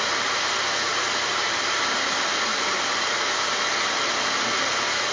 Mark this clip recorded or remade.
recorded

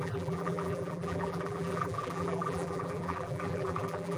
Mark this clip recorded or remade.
remade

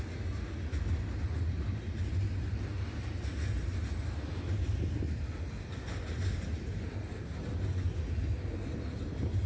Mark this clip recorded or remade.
recorded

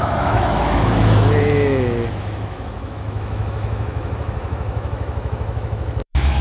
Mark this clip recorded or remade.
remade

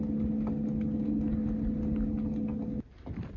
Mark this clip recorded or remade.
recorded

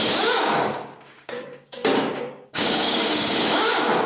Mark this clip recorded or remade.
remade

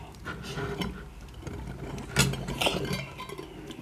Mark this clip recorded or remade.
recorded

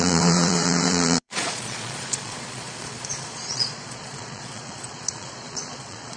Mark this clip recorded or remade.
remade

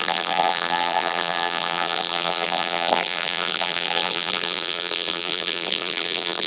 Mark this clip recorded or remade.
remade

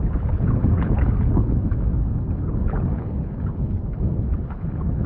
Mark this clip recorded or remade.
remade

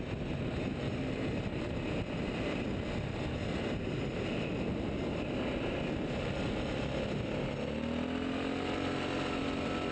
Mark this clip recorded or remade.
recorded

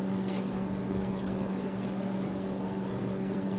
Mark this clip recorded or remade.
remade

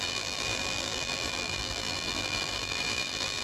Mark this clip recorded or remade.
remade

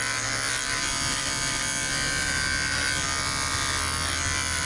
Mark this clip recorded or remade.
recorded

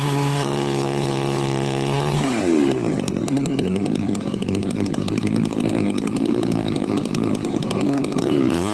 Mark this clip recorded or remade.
remade